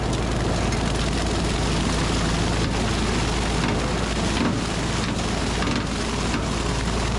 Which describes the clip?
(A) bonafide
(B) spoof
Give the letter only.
A